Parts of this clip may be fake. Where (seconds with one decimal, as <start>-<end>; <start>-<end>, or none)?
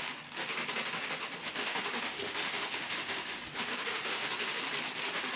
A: 1.4-4.6